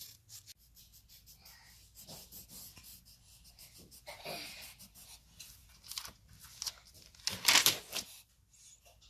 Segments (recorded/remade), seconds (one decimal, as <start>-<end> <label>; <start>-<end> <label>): 0.0-9.1 recorded